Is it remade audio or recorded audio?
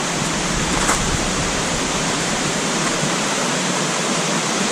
remade